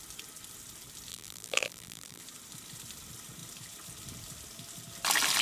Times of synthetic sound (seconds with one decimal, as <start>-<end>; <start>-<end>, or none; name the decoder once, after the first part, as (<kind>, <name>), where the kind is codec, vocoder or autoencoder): 1.1-2.2 (vocoder, BigVGAN v2)